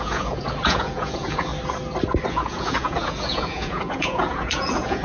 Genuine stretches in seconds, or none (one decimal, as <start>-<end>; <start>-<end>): 1.5-2.3